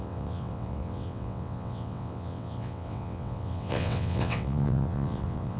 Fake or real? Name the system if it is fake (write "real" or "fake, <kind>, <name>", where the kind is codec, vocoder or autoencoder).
fake, vocoder, WaveNeXt